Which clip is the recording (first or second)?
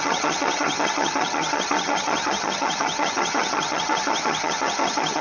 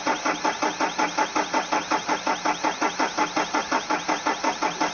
second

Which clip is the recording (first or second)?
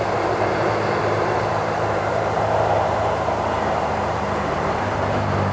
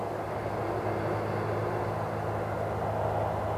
second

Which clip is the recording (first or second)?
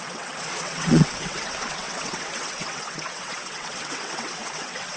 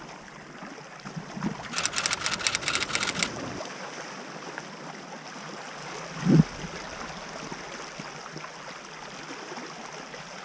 second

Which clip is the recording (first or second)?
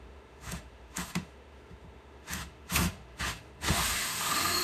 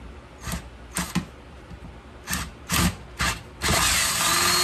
second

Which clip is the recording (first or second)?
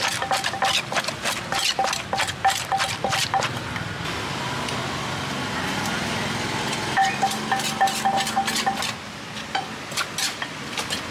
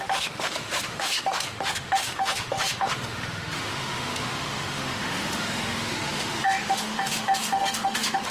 first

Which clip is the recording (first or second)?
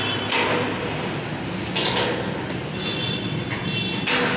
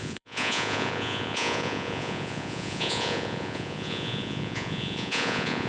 first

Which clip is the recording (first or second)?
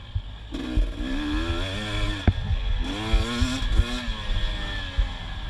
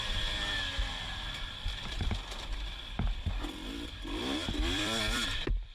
first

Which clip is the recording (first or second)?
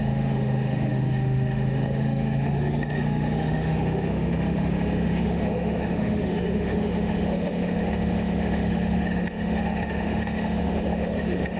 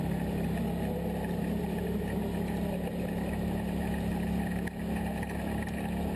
second